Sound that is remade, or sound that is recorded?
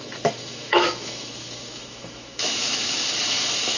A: remade